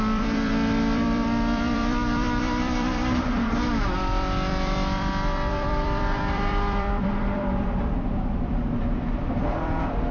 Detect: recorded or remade remade